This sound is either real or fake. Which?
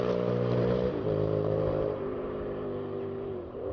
fake